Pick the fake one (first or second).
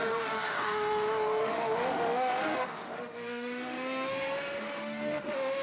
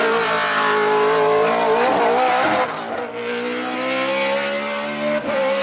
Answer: first